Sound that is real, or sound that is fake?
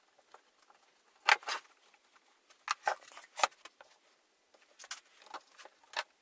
real